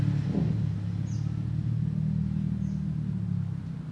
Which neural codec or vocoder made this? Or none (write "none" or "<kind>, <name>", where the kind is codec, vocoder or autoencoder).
none